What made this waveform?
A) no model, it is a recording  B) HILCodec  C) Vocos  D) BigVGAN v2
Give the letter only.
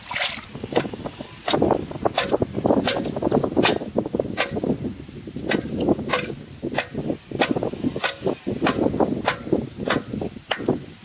A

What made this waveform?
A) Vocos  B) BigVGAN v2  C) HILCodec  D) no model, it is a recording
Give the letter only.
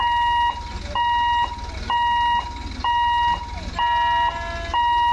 D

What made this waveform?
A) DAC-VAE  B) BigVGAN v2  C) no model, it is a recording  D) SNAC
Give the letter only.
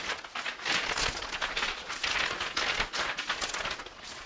C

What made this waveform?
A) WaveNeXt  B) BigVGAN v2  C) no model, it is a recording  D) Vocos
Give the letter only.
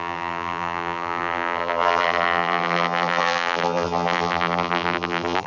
B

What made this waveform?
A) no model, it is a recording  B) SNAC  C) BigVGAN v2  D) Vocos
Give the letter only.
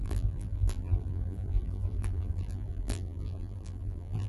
C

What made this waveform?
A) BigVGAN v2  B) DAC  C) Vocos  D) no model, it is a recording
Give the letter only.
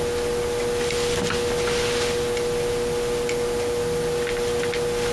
D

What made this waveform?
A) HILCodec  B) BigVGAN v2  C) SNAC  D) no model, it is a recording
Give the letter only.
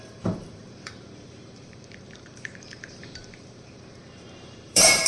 B